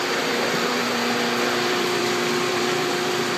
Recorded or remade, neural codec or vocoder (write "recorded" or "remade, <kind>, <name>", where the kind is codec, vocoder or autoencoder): remade, vocoder, BigVGAN v2